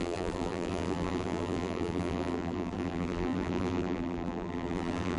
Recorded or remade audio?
remade